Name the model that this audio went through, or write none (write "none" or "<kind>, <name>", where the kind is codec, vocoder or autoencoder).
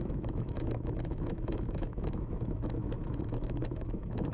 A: autoencoder, DAC-VAE